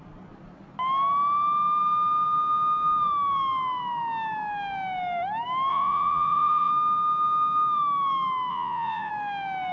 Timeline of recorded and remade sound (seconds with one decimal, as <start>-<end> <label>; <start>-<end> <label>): 0.0-5.7 recorded; 5.7-6.7 remade; 6.7-8.5 recorded; 8.5-9.1 remade; 9.1-9.7 recorded